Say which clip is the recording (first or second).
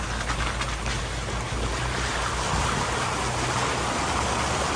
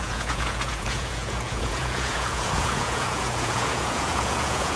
first